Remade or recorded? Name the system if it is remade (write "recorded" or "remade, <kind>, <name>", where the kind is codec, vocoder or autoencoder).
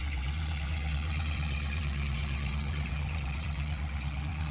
remade, vocoder, WaveNeXt